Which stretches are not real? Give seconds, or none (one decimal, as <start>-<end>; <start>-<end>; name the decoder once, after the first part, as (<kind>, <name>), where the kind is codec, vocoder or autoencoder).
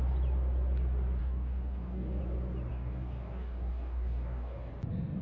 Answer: 1.2-2.2 (codec, DAC); 2.7-4.7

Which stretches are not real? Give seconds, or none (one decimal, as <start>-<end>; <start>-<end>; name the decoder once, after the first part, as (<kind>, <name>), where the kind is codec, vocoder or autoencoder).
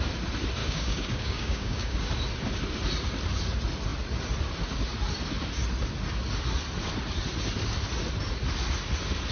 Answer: 0.6-2.1 (codec, DAC)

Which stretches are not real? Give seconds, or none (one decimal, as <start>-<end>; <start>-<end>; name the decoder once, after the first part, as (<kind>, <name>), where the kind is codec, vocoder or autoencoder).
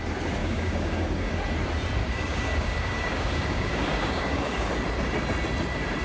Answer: 0.4-1.3 (codec, DAC); 2.0-4.7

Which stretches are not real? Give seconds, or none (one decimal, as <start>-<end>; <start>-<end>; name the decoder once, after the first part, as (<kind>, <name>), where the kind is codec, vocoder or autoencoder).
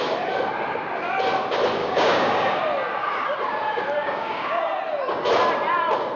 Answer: 1.8-2.6 (codec, DAC); 4.0-4.6